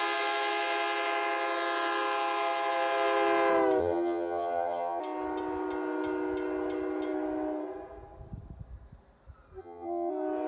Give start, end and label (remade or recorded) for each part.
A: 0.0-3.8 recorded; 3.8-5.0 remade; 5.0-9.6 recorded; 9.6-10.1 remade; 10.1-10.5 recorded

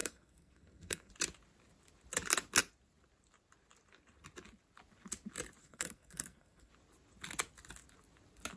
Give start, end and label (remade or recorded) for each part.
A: 0.0-1.1 remade; 1.1-5.6 recorded; 5.6-6.7 remade; 6.7-8.6 recorded

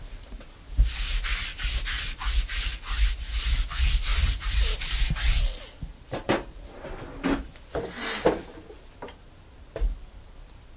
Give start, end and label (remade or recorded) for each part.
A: 0.0-10.8 recorded

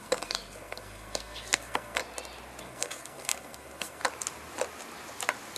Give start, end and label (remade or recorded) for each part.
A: 0.0-2.0 remade; 2.0-2.6 recorded; 2.6-4.0 remade; 4.0-5.6 recorded

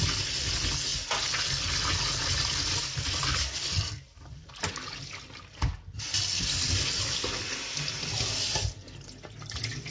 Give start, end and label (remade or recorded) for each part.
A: 0.0-9.9 recorded

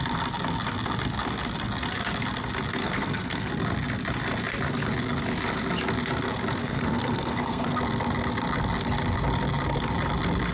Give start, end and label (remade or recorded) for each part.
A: 0.0-2.8 recorded; 2.8-3.5 remade; 3.5-6.6 recorded; 6.6-7.8 remade; 7.8-10.5 recorded

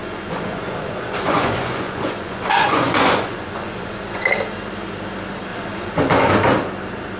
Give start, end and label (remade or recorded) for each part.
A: 0.0-4.3 remade; 4.3-5.5 recorded; 5.5-6.3 remade; 6.3-7.2 recorded

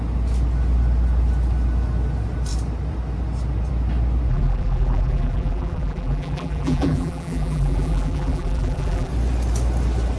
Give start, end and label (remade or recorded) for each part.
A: 0.0-4.3 recorded; 4.3-9.1 remade; 9.1-10.2 recorded